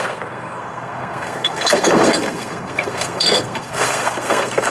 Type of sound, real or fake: fake